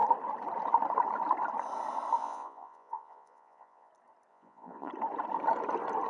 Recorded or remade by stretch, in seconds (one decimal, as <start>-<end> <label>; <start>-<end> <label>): 0.0-2.2 recorded; 2.2-3.9 remade; 3.9-4.3 recorded; 4.3-4.9 remade; 4.9-6.1 recorded